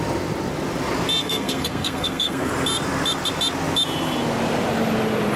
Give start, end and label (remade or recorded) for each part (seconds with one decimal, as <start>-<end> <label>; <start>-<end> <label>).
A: 0.0-1.2 recorded; 1.2-2.5 remade; 2.5-5.4 recorded